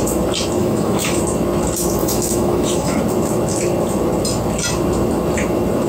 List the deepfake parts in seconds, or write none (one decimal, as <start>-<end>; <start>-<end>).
0.6-1.2; 2.0-3.0